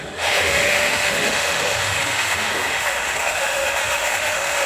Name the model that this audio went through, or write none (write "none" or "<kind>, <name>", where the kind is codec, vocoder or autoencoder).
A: autoencoder, DAC-VAE